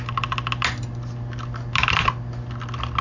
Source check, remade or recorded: recorded